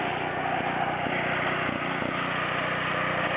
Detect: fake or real real